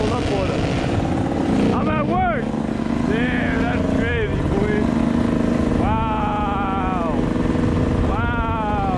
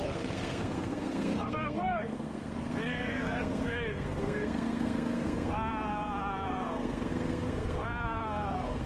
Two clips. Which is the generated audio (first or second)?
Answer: second